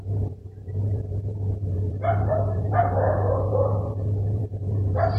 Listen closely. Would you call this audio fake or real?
fake